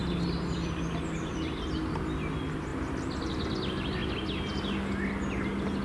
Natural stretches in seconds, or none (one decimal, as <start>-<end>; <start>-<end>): 0.0-5.8